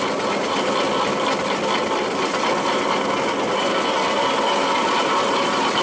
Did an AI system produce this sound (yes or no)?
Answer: no